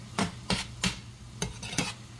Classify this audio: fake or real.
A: real